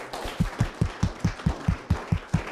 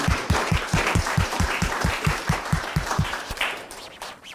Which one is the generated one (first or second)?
second